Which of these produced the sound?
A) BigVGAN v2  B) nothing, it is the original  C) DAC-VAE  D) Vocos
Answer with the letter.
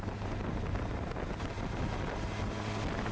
B